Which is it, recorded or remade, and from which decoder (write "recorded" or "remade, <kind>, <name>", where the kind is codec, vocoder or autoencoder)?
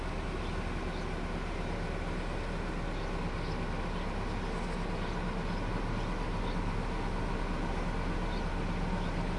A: recorded